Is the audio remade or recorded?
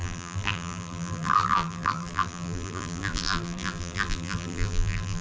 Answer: remade